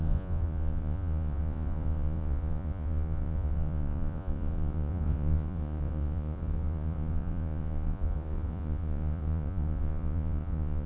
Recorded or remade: remade